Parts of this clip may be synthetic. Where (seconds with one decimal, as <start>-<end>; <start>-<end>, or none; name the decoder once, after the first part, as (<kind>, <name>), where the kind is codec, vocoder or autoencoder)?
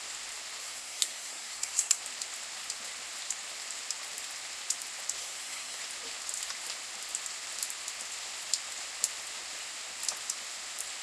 0.6-2.0 (codec, SNAC); 5.2-5.8